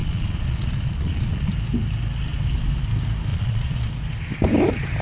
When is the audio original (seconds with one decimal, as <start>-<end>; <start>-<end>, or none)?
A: 1.5-3.3; 3.9-5.0